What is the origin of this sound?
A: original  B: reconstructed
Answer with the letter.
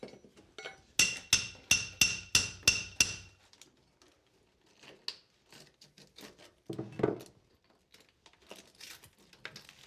A